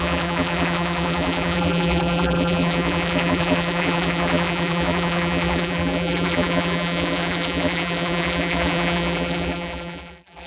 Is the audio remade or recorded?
remade